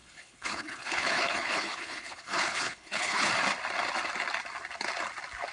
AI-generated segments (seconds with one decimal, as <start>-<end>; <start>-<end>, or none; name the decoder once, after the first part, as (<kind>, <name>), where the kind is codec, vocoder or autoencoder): 0.0-3.3 (codec, HILCodec)